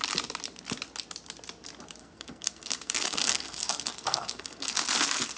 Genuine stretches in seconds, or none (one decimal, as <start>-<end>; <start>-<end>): 0.0-2.0